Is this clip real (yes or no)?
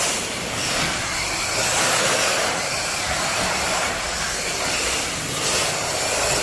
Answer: yes